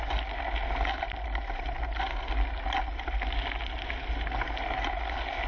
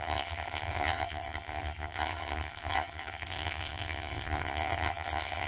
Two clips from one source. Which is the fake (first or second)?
second